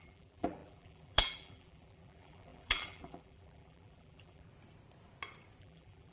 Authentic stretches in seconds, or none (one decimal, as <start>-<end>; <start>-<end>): 4.5-5.6